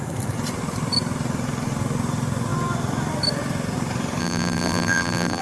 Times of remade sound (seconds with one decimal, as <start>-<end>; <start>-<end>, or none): 4.2-5.4